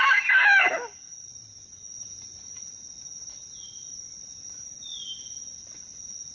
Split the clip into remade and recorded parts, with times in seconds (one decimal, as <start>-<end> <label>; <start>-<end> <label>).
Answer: 0.0-6.3 recorded